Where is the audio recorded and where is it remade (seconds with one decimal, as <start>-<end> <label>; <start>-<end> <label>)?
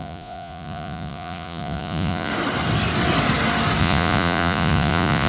0.0-2.3 remade; 2.3-3.8 recorded; 3.8-5.3 remade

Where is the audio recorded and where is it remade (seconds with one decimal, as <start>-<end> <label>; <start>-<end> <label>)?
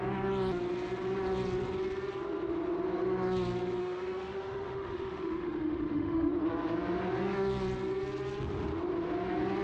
0.0-3.8 recorded; 3.8-6.3 remade; 6.3-9.6 recorded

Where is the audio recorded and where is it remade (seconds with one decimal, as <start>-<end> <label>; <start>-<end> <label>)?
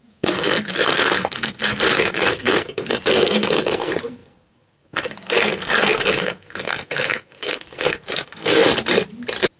0.0-8.6 remade; 8.6-9.6 recorded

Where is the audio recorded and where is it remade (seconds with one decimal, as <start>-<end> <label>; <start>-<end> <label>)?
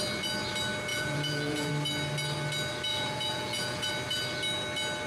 0.0-0.9 recorded; 0.9-1.7 remade; 1.7-2.9 recorded; 2.9-3.9 remade; 3.9-5.1 recorded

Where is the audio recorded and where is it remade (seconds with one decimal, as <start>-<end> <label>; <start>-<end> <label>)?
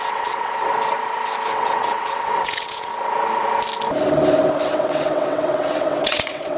0.0-0.7 remade; 0.7-1.5 recorded; 1.5-2.9 remade; 2.9-4.7 recorded; 4.7-6.6 remade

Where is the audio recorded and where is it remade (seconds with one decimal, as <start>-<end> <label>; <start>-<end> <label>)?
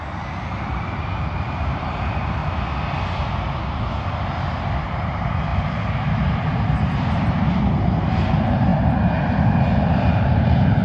0.0-2.4 remade; 2.4-4.4 recorded; 4.4-8.7 remade; 8.7-9.9 recorded; 9.9-10.8 remade